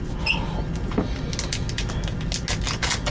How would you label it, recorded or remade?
recorded